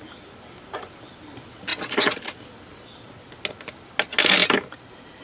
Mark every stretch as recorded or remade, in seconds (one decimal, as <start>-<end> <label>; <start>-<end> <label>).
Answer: 0.0-4.4 recorded; 4.4-5.2 remade